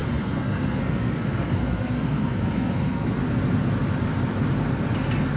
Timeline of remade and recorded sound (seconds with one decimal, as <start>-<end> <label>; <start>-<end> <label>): 0.0-3.2 remade; 3.2-5.4 recorded